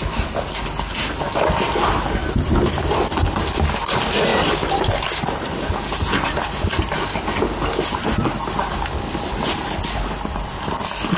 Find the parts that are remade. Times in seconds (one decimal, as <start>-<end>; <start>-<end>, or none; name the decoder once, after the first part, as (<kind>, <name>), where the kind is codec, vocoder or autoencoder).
none